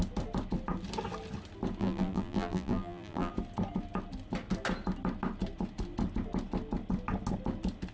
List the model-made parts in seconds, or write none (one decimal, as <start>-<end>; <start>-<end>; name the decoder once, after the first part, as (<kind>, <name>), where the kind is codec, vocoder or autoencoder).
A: 1.8-3.3 (vocoder, BigVGAN v2)